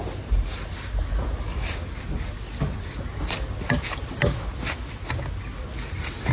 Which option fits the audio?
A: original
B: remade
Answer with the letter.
A